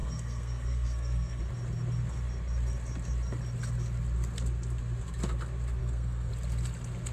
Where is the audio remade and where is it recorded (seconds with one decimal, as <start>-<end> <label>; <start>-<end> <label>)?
0.0-1.4 remade; 1.4-5.8 recorded; 5.8-6.3 remade; 6.3-7.1 recorded